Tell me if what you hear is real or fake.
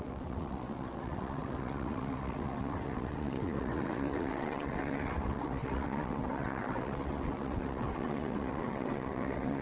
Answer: fake